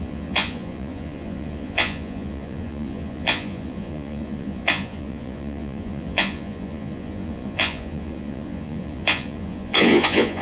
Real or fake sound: fake